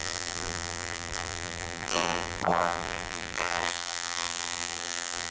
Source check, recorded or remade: remade